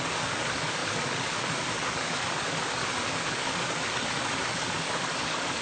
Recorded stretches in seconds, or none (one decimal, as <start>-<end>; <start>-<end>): none